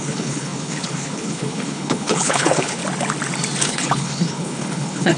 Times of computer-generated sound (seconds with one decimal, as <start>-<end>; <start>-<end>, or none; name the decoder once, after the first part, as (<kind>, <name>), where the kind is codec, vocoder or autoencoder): 0.0-2.8 (codec, HILCodec); 3.6-5.2